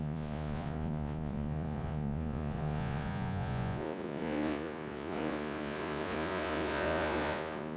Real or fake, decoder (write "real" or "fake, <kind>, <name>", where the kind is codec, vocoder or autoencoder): fake, vocoder, Vocos